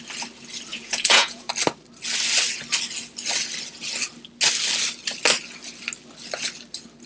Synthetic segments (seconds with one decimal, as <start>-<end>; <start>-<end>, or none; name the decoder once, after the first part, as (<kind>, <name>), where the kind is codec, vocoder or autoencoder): 0.7-1.5 (vocoder, Vocos)